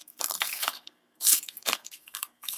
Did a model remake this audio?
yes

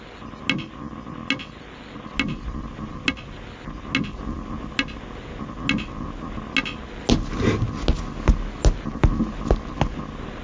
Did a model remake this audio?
no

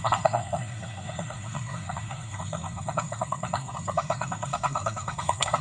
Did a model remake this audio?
yes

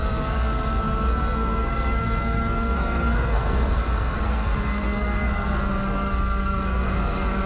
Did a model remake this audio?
yes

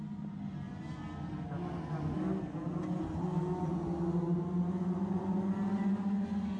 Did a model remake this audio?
no